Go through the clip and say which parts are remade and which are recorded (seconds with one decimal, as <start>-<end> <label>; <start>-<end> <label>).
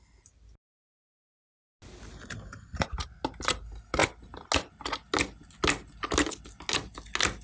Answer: 0.0-7.4 recorded